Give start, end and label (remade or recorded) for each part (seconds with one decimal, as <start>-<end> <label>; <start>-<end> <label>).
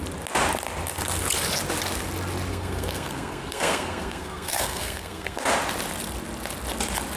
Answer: 0.0-2.5 recorded; 2.5-5.4 remade; 5.4-7.2 recorded